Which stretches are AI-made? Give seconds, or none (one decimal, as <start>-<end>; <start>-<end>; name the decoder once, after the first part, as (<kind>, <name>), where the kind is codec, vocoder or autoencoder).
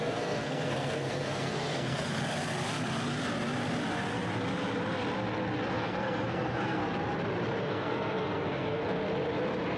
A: 0.0-2.2 (codec, SNAC); 5.7-6.8; 7.6-9.0